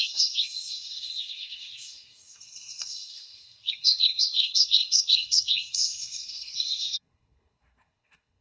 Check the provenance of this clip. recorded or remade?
remade